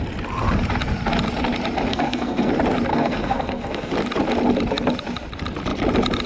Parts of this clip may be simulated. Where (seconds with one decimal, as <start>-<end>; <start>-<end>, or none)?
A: 1.9-2.5; 2.9-3.9